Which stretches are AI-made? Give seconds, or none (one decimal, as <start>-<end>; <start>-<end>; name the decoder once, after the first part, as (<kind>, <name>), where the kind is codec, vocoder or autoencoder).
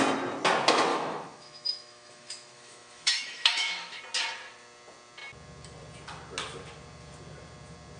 0.9-4.0 (autoencoder, DAC-VAE)